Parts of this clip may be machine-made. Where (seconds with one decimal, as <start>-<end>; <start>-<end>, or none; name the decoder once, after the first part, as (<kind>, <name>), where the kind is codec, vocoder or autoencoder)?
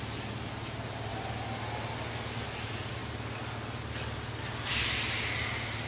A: none